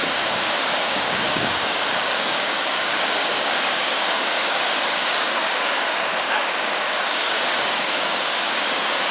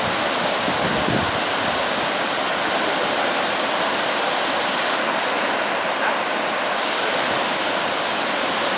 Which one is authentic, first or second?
second